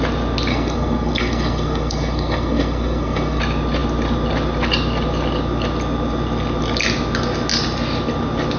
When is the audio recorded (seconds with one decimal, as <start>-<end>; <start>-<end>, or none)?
0.0-0.5; 3.4-8.6